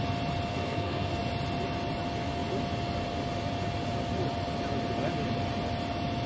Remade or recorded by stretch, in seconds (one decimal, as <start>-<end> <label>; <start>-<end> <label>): 0.0-0.5 recorded; 0.5-1.1 remade; 1.1-6.3 recorded